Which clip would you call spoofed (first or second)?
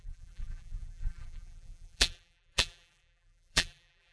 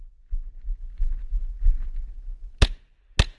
first